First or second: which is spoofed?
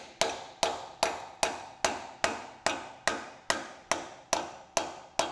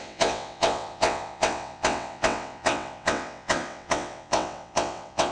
second